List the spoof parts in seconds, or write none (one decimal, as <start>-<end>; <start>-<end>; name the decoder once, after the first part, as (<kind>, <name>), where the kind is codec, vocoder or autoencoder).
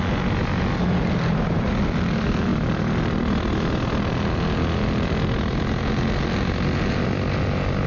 none